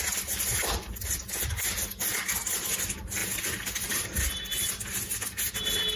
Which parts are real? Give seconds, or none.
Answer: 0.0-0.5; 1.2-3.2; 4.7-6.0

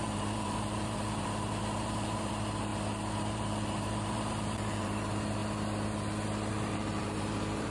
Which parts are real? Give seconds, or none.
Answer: 2.7-3.2; 5.4-6.5

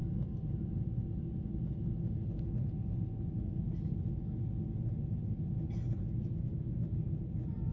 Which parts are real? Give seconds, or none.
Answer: 0.0-7.7

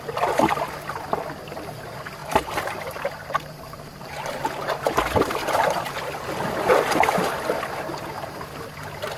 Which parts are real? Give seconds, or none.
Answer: 0.0-2.2; 6.0-9.2

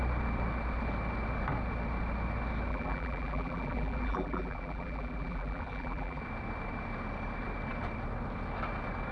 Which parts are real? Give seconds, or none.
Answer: 0.0-2.7; 6.2-9.1

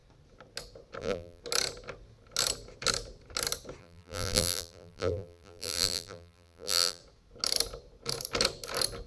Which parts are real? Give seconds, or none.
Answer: 0.0-1.0; 1.4-3.8; 7.0-9.1